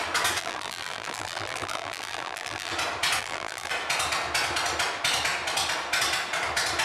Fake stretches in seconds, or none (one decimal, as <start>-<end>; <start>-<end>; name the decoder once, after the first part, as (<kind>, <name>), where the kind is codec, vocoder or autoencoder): 0.4-2.7 (vocoder, BigVGAN v2); 3.2-3.7